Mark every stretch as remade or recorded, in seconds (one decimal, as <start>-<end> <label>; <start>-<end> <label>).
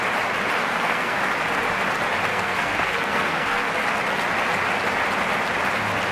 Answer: 0.0-0.6 recorded; 0.6-1.2 remade; 1.2-2.3 recorded; 2.3-3.7 remade; 3.7-6.1 recorded